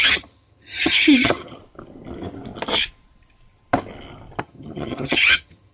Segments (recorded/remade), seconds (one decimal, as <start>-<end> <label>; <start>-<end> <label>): 0.0-1.6 remade; 1.6-4.4 recorded; 4.4-5.7 remade